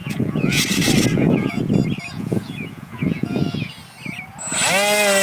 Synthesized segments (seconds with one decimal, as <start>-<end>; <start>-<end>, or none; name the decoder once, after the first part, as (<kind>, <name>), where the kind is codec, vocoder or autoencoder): 0.0-0.6 (vocoder, Vocos); 1.1-1.6; 2.1-3.7